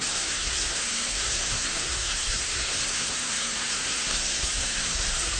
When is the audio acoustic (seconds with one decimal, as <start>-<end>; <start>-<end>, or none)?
none